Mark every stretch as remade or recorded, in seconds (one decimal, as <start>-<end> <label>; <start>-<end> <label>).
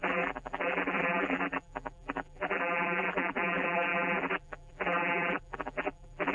0.0-6.3 remade